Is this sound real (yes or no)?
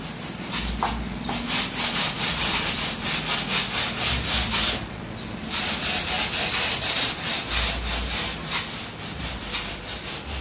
yes